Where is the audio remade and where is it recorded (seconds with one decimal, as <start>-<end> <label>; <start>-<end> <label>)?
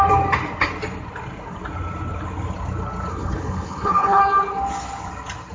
0.0-3.1 recorded; 3.1-4.2 remade; 4.2-5.5 recorded